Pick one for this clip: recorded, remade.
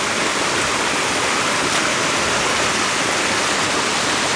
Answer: recorded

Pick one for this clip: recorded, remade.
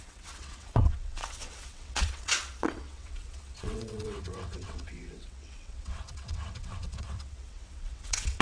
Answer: remade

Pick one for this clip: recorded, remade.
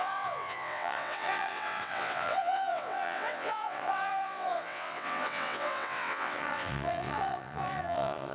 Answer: remade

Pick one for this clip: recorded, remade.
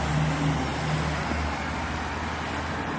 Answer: recorded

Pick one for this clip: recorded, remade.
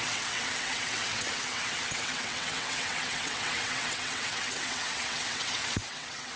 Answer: remade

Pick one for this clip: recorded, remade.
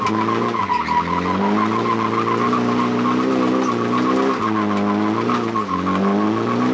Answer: recorded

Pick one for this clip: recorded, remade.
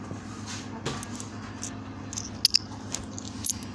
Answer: recorded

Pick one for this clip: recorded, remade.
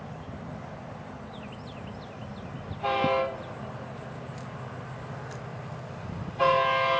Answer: recorded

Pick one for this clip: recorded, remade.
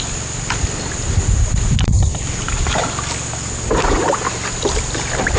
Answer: recorded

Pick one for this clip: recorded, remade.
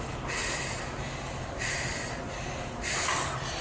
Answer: recorded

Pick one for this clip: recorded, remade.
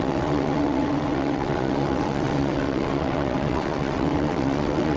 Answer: remade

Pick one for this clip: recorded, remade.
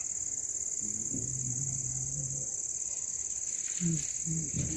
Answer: recorded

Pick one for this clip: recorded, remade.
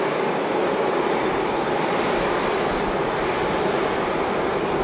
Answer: recorded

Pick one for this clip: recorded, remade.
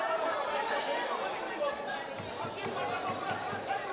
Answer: recorded